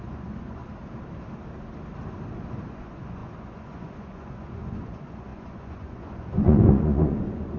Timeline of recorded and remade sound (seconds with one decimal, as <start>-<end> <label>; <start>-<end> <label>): 0.0-0.6 remade; 0.6-2.7 recorded; 2.7-7.6 remade